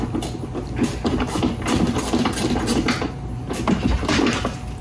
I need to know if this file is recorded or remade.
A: recorded